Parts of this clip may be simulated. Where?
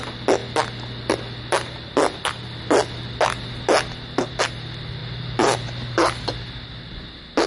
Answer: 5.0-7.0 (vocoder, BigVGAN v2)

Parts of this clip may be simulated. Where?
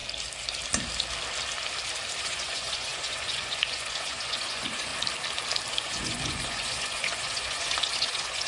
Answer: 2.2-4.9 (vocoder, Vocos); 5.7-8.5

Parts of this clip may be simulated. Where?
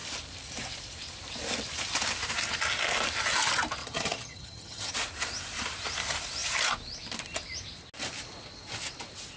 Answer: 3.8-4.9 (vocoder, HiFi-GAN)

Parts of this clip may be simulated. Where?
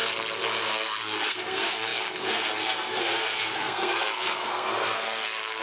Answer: 0.7-5.6 (codec, SNAC)